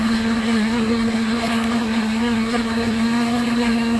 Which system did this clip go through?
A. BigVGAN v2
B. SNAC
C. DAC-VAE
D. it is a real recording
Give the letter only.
B